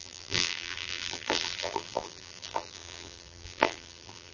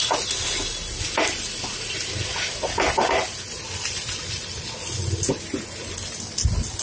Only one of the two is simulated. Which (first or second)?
first